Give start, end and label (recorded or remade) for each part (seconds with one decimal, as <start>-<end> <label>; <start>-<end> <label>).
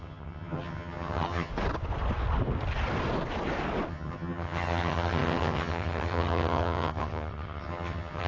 0.0-1.5 remade; 1.5-3.9 recorded; 3.9-8.3 remade